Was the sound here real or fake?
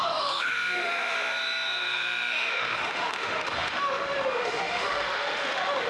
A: fake